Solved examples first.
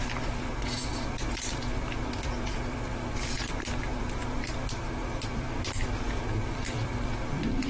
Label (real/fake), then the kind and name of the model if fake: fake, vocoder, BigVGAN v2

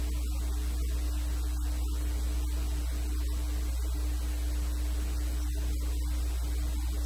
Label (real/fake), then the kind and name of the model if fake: real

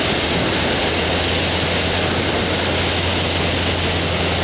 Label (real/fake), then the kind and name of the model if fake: real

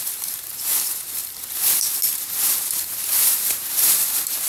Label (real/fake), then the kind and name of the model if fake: fake, vocoder, BigVGAN v2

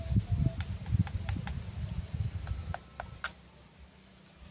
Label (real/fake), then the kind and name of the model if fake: real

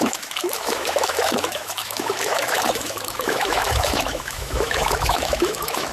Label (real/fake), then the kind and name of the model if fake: fake, autoencoder, DAC-VAE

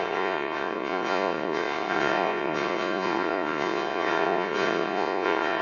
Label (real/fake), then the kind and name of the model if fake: fake, vocoder, Vocos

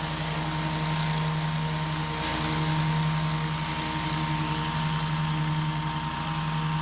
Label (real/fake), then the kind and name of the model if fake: real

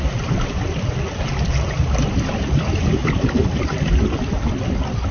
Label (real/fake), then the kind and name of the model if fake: real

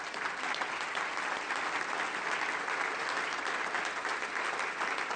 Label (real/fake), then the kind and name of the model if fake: real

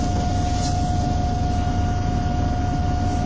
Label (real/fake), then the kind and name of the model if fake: real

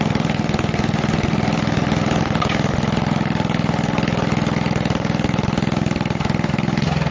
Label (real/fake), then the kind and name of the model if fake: real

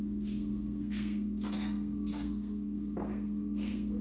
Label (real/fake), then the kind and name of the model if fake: fake, codec, SNAC